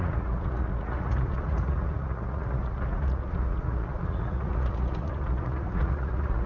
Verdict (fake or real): fake